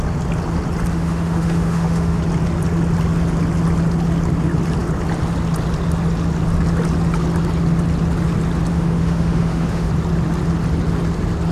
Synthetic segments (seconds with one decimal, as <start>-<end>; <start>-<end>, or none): 0.9-2.2; 8.7-9.9